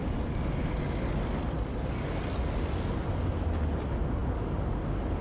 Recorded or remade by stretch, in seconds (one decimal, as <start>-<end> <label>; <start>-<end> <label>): 0.0-5.2 recorded